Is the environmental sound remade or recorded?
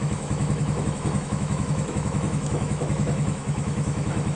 remade